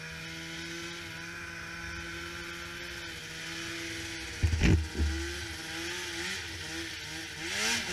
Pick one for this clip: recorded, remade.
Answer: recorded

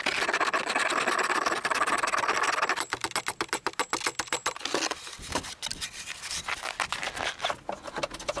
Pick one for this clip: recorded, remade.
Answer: recorded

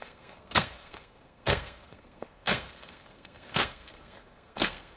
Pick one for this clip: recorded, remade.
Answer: remade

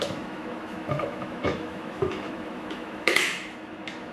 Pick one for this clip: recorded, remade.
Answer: remade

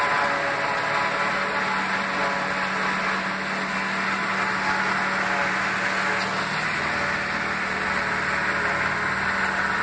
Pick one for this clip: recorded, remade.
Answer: recorded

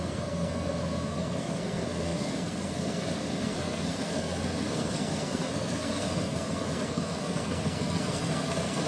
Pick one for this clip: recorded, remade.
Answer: remade